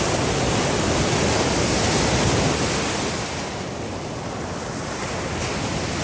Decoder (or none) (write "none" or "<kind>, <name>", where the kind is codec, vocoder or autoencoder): none